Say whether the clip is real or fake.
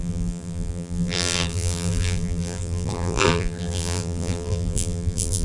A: fake